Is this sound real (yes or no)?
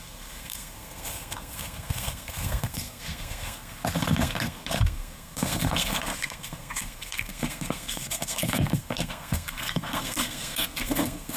no